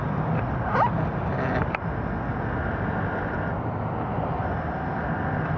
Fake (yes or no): no